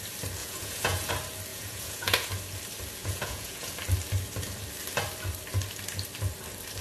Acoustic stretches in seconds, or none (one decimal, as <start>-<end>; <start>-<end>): 0.0-0.4; 1.1-1.5; 2.3-3.0; 3.7-6.8